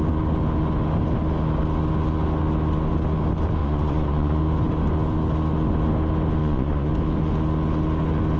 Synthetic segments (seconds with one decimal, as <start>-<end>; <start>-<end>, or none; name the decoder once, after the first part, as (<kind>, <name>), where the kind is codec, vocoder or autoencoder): 3.6-4.4 (vocoder, Vocos); 6.4-6.9